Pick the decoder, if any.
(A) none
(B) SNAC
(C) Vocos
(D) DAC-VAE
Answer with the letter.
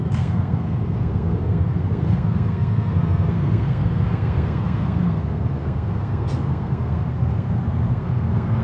B